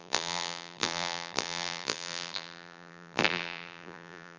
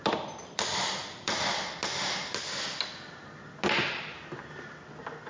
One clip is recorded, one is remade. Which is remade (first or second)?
first